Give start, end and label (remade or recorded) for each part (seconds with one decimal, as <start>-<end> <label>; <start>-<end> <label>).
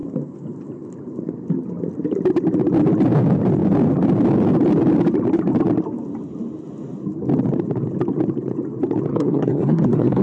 0.0-9.1 recorded; 9.1-10.2 remade